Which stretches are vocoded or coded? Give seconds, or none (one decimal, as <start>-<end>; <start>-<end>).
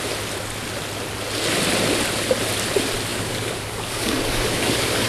3.1-5.1